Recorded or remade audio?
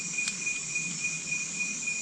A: recorded